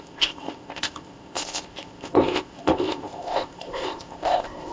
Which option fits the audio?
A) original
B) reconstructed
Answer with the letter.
B